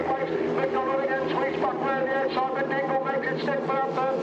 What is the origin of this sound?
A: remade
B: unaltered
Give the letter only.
B